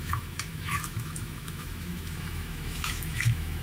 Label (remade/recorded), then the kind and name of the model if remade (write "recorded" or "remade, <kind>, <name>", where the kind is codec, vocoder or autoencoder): remade, autoencoder, DAC-VAE